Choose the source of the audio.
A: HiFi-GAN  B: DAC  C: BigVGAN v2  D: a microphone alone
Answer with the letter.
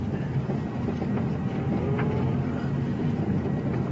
D